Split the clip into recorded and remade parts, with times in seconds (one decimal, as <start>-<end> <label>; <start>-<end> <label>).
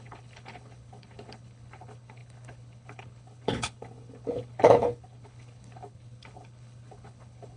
0.0-7.6 remade